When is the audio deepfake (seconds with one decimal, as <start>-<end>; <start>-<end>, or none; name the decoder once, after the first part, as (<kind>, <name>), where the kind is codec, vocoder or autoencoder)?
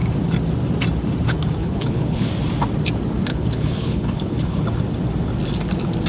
1.6-2.3 (codec, HILCodec); 3.3-4.6